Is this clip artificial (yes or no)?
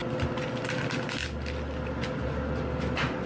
no